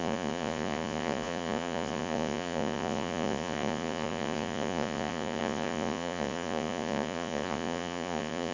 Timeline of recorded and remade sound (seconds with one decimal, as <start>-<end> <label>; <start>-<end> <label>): 0.0-8.5 remade